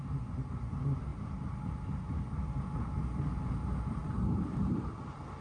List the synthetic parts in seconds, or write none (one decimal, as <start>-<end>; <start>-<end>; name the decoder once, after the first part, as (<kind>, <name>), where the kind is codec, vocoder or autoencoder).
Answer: 1.1-2.6 (vocoder, BigVGAN v2); 4.0-5.4